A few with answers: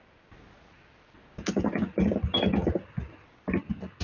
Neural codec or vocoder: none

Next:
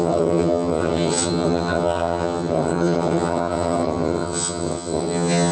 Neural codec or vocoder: vocoder, HiFi-GAN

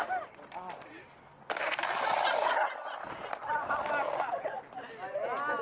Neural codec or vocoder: none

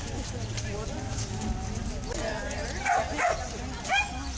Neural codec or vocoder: none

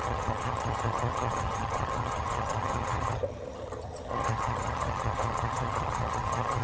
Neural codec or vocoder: vocoder, HiFi-GAN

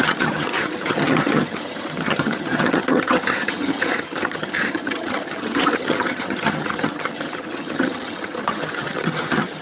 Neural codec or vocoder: vocoder, HiFi-GAN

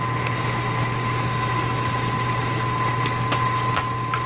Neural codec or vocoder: none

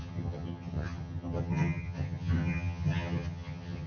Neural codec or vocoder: vocoder, HiFi-GAN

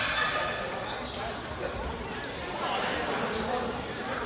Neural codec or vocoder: none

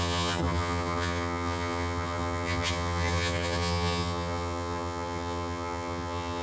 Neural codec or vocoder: vocoder, HiFi-GAN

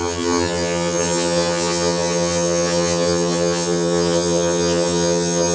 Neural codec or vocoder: vocoder, HiFi-GAN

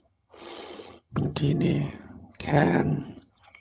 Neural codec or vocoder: vocoder, HiFi-GAN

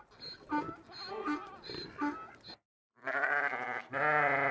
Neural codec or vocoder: none